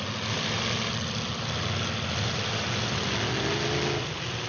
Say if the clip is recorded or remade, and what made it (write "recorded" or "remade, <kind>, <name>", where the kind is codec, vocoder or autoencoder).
recorded